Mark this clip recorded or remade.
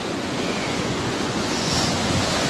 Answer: remade